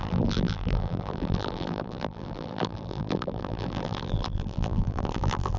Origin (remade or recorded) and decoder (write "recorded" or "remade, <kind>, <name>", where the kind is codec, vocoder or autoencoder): remade, vocoder, BigVGAN v2